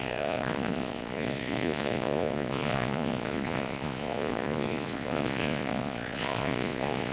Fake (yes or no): yes